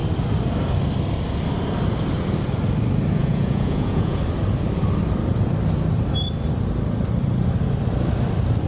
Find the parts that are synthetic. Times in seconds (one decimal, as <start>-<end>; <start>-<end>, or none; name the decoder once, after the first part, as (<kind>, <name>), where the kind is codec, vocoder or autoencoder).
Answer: 3.2-4.2 (vocoder, Vocos)